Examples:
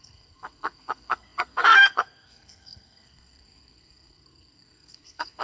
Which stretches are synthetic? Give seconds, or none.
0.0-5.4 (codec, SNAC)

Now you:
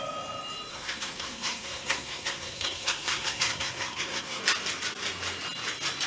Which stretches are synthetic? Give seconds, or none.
0.7-4.4 (codec, SNAC)

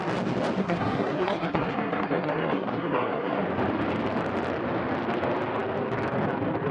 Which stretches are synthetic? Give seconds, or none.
0.6-3.4 (codec, SNAC)

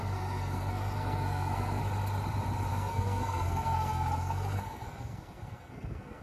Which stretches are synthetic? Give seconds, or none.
0.0-1.8 (codec, SNAC); 2.7-6.2

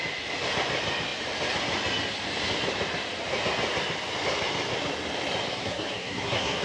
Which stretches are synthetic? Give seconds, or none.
5.5-6.6 (codec, SNAC)

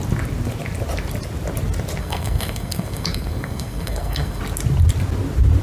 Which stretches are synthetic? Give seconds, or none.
2.0-4.4 (codec, SNAC)

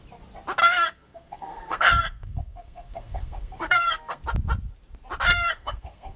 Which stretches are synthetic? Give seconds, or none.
0.6-4.2 (codec, SNAC); 5.3-6.2